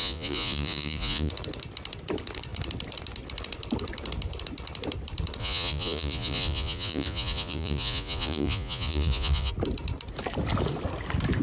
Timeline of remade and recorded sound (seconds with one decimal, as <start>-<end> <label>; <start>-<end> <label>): 0.0-1.3 remade; 1.3-5.4 recorded; 5.4-9.5 remade; 9.5-11.4 recorded

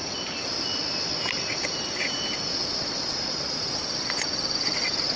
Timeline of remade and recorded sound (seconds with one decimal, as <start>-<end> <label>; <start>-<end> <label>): 0.0-2.5 recorded; 2.5-5.2 remade

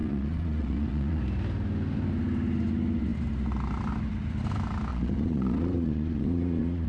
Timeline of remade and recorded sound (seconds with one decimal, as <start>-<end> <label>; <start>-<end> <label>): 0.0-1.2 remade; 1.2-4.9 recorded; 4.9-6.9 remade

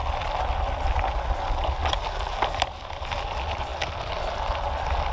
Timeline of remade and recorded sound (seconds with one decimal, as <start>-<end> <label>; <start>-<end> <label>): 0.0-5.1 recorded